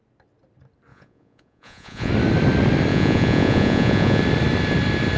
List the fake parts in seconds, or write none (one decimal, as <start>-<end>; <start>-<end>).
0.9-2.1; 2.9-4.2